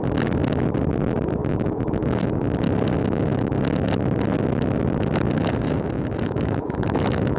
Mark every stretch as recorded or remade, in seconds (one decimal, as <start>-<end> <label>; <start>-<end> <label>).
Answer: 0.0-1.4 recorded; 1.4-2.4 remade; 2.4-3.0 recorded; 3.0-3.6 remade; 3.6-5.4 recorded; 5.4-7.4 remade